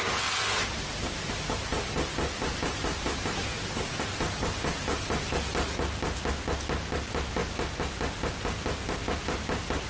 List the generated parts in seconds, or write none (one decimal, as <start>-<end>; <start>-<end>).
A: none